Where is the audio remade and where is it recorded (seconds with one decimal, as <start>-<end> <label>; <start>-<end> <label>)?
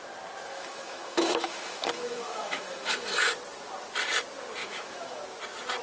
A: 0.0-0.5 recorded; 0.5-3.3 remade; 3.3-4.6 recorded; 4.6-5.2 remade; 5.2-5.8 recorded